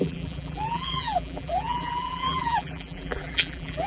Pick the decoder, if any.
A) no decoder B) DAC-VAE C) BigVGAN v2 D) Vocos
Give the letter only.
C